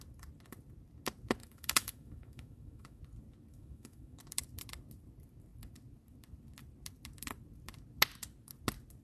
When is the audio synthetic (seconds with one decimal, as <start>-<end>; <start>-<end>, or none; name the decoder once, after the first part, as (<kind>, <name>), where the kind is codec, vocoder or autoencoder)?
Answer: 1.4-3.0 (autoencoder, DAC-VAE); 3.5-4.2